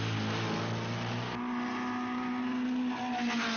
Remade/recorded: recorded